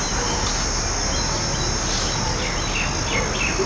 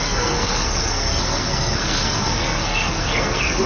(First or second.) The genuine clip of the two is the first